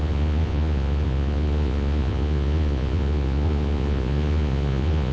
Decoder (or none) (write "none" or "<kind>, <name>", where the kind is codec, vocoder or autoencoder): vocoder, Vocos